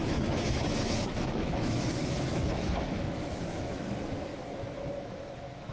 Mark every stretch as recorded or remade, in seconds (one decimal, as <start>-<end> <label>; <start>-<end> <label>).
0.0-5.7 remade